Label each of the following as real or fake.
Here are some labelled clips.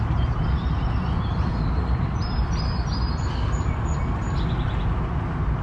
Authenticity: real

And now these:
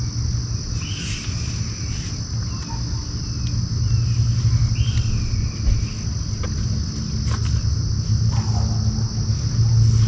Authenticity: real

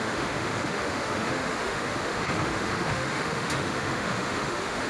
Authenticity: fake